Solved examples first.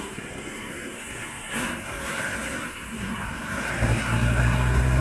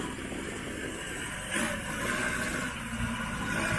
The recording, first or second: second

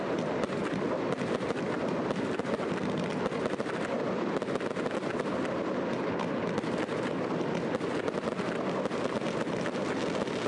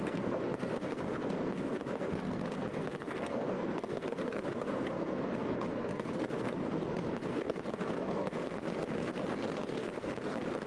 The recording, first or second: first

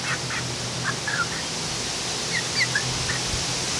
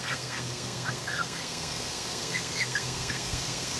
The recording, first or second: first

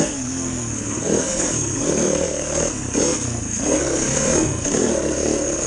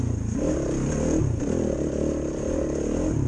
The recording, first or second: second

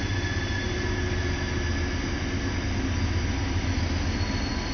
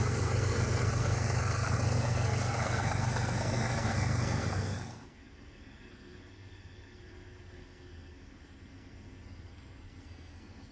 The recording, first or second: first